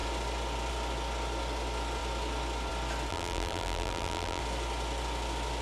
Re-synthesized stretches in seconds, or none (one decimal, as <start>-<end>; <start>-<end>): 3.1-4.4